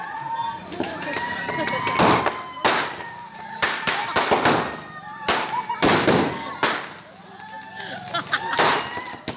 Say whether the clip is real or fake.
real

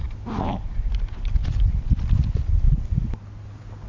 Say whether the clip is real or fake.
real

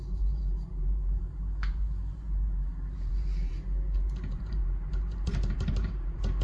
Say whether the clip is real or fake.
fake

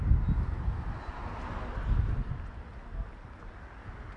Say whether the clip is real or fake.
real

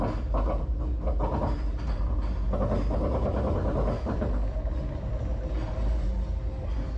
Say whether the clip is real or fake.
real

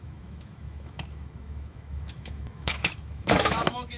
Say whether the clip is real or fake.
fake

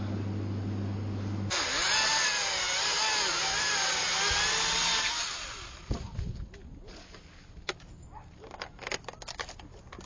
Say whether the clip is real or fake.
real